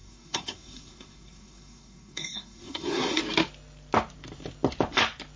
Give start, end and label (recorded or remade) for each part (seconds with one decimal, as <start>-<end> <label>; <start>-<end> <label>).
0.0-3.2 remade; 3.2-5.4 recorded